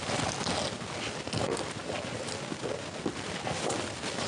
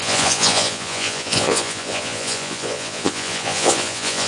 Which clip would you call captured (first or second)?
first